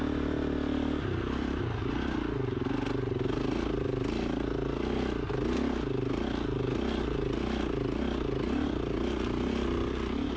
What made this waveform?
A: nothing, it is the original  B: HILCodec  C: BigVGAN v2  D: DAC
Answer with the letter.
A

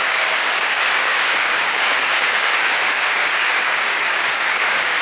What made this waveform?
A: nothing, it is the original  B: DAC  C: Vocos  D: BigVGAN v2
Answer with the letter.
B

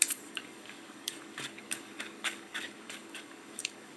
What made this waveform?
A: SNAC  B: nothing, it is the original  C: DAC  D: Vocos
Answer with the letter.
C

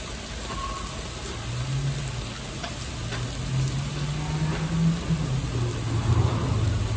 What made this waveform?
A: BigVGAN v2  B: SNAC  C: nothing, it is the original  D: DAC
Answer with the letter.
C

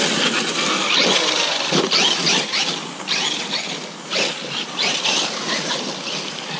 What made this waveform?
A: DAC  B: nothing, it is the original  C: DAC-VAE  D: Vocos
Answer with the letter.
B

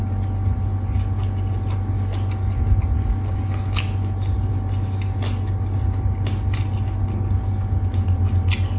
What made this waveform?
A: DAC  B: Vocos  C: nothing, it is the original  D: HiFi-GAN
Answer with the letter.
C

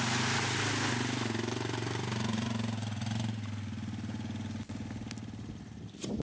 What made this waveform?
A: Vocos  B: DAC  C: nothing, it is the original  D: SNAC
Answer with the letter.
C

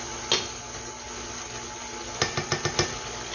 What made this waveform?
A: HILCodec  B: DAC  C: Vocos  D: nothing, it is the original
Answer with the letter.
D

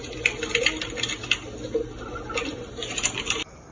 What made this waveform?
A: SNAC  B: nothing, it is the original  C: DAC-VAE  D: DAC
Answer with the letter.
B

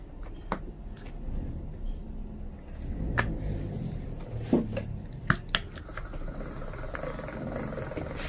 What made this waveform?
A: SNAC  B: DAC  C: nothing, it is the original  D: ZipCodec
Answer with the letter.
C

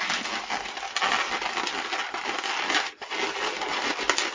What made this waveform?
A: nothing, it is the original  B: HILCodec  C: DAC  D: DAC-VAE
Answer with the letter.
A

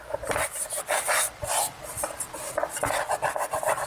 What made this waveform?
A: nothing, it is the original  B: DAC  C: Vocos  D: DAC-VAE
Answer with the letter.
A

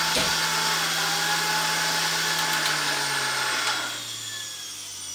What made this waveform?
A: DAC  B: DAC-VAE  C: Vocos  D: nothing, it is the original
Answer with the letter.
D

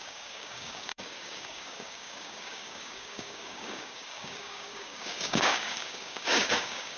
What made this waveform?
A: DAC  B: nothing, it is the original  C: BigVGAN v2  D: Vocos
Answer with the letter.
A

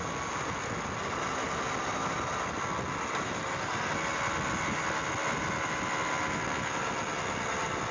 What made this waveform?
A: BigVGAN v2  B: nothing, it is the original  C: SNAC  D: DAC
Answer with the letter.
B